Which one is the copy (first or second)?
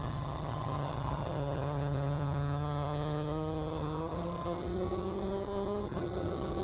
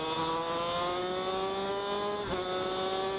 first